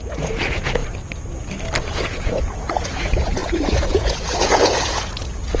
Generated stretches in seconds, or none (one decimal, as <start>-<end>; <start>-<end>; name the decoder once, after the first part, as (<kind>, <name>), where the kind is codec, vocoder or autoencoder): 0.0-0.8 (vocoder, Vocos); 1.8-5.6